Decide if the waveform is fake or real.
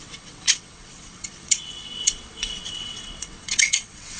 fake